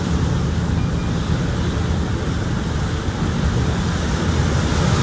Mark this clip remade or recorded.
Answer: recorded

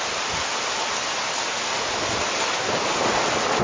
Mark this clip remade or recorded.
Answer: recorded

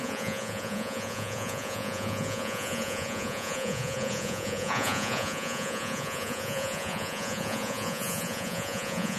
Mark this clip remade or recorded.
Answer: remade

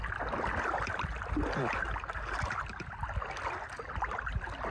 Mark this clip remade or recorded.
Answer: recorded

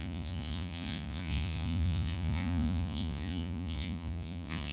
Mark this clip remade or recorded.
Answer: remade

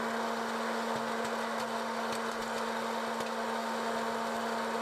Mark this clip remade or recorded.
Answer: recorded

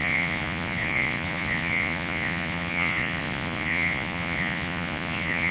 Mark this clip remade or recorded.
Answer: remade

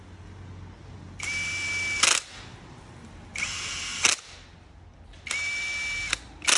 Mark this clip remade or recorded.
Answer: recorded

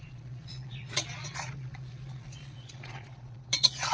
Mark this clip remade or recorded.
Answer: remade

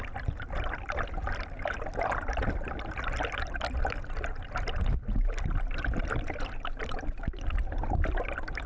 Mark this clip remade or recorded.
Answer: recorded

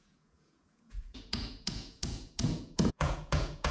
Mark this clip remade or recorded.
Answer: remade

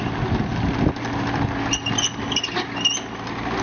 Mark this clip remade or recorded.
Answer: recorded